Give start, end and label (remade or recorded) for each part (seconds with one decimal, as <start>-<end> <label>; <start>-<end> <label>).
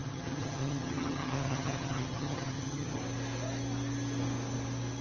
0.0-3.0 remade; 3.0-5.0 recorded